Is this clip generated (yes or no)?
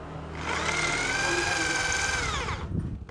no